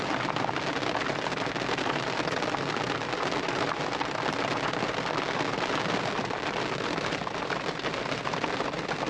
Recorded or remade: recorded